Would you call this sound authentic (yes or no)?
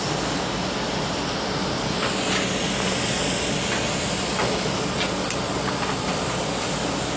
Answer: yes